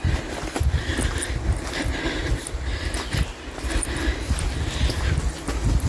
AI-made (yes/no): no